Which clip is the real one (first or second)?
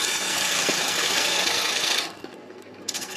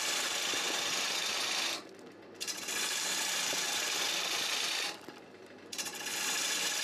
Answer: second